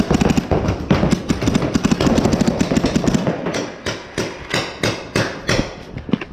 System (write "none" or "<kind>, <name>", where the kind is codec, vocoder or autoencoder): none